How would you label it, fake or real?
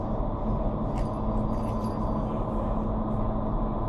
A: real